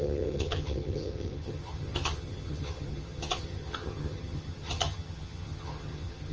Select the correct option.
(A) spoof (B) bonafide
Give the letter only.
A